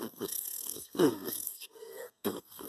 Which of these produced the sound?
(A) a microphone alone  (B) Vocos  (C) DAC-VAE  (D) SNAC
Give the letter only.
D